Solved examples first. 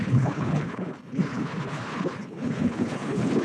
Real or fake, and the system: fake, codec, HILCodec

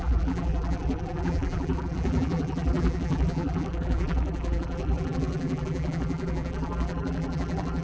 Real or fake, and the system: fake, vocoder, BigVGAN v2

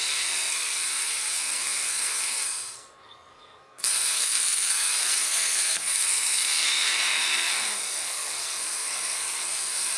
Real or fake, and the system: fake, codec, SNAC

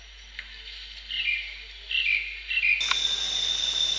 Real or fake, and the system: real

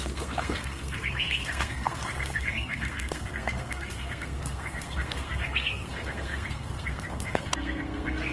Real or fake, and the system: fake, codec, SNAC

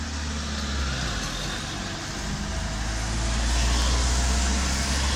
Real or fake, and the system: real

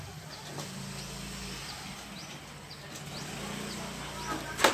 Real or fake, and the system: real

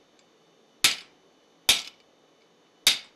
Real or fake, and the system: real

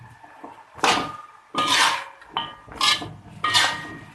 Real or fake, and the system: real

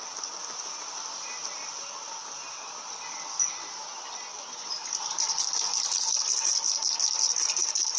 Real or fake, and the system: real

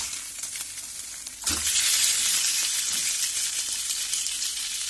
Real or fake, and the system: real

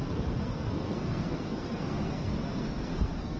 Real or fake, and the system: fake, codec, SNAC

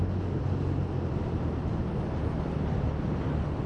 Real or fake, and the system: real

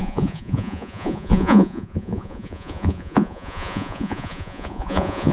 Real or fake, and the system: fake, vocoder, Vocos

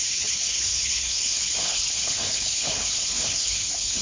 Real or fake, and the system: fake, codec, HILCodec